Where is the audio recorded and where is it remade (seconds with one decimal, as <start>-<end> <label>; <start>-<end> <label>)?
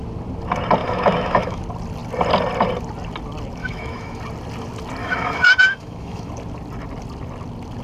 0.0-0.8 recorded; 0.8-1.6 remade; 1.6-3.6 recorded; 3.6-4.2 remade; 4.2-5.0 recorded; 5.0-6.3 remade; 6.3-7.8 recorded